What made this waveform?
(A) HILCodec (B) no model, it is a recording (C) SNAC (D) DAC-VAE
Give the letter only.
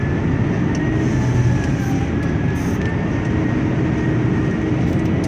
B